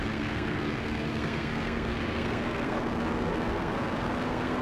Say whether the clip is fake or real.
fake